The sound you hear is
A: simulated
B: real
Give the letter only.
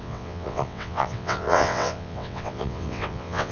A